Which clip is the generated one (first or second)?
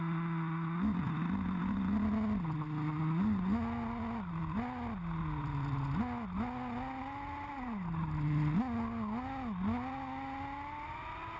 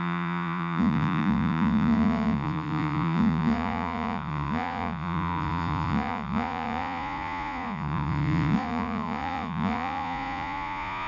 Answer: second